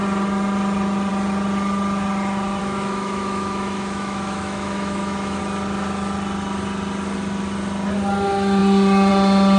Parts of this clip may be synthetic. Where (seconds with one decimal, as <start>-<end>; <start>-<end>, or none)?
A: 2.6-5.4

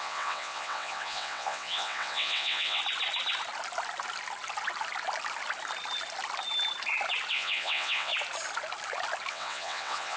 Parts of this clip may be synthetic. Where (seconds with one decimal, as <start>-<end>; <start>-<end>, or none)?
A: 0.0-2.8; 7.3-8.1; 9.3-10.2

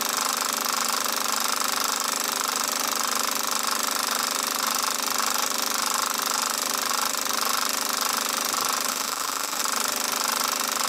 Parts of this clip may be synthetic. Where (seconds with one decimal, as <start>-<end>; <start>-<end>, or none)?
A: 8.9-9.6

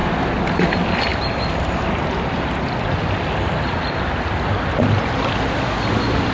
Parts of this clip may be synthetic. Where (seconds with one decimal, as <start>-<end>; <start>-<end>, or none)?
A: none

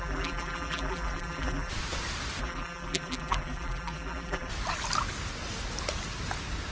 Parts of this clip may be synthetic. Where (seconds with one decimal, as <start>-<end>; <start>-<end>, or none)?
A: 0.0-1.7; 2.4-4.5

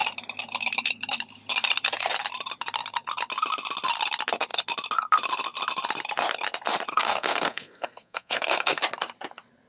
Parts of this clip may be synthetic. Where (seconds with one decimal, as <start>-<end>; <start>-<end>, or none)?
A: 6.9-8.8

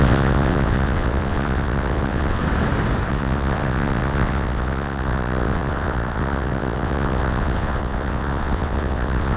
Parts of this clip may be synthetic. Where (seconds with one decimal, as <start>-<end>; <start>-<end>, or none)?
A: 0.0-2.4; 3.1-9.4